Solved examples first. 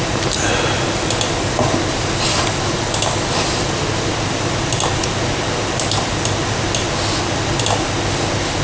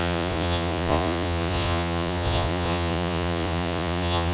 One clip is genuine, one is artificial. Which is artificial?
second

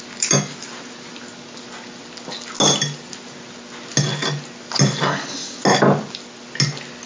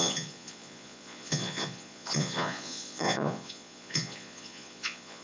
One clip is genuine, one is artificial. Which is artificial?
second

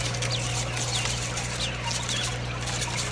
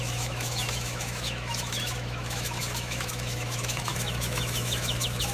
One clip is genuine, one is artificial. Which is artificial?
second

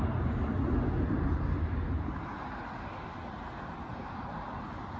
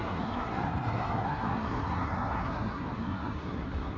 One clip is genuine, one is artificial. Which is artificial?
second